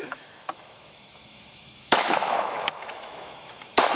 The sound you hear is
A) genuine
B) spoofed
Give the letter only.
B